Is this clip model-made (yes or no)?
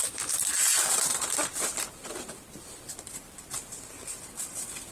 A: yes